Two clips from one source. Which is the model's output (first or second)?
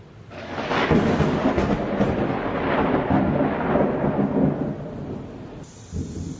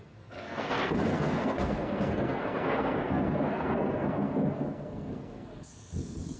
second